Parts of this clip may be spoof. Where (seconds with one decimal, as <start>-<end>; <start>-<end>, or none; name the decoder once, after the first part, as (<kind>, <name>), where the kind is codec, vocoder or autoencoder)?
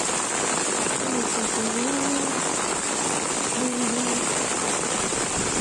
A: none